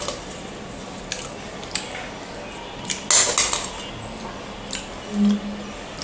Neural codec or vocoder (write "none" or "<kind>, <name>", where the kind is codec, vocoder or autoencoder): none